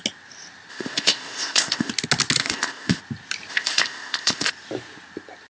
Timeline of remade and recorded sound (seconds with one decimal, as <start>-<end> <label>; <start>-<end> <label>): 0.0-0.7 recorded; 0.7-1.9 remade; 1.9-2.4 recorded; 2.4-3.0 remade; 3.0-3.5 recorded; 3.5-4.5 remade; 4.5-5.6 recorded